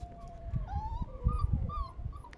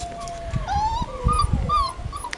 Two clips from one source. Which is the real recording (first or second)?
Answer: second